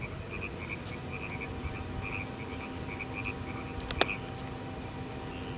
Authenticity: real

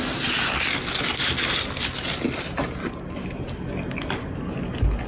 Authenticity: real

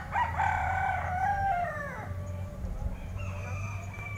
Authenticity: fake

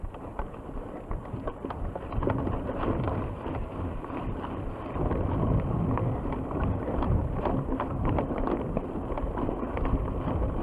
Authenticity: real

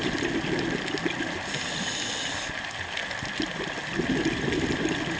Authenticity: real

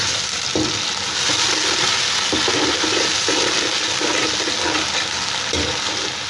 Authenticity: real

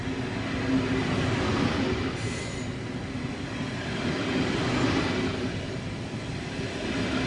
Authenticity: real